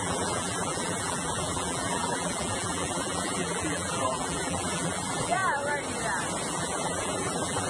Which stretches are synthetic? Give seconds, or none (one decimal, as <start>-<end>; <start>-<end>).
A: 0.0-5.4; 6.5-7.7